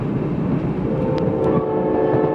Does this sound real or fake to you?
real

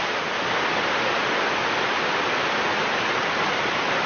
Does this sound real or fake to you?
real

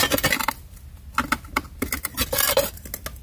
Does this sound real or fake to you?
real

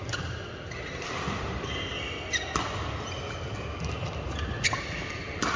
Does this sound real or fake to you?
real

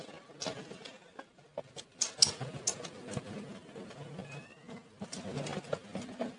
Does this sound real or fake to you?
real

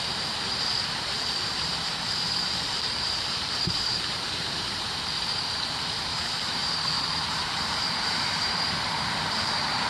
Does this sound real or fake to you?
fake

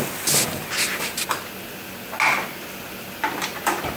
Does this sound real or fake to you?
real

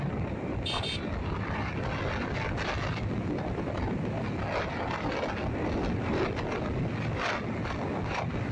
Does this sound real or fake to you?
real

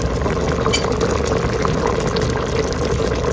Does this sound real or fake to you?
real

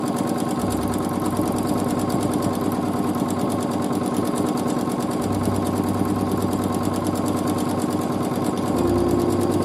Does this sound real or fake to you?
real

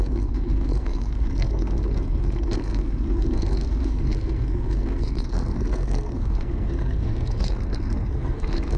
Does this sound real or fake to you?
fake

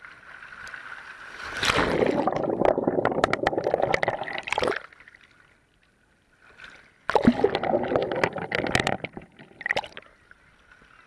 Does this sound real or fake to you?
real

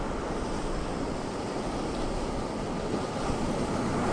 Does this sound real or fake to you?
real